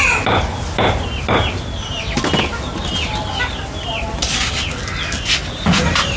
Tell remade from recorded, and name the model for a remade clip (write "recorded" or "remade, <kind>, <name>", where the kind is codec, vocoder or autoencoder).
recorded